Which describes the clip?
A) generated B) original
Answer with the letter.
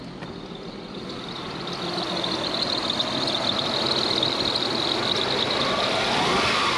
B